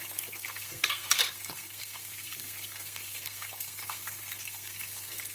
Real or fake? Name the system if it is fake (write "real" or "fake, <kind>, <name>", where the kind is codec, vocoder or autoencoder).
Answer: fake, codec, SNAC